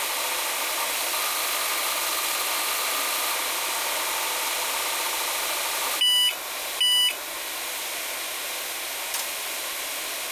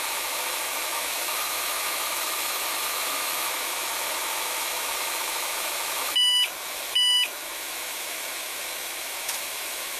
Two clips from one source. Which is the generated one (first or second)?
second